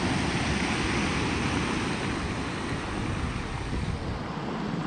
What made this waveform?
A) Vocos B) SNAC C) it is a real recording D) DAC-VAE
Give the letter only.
C